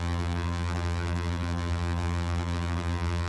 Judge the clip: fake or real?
fake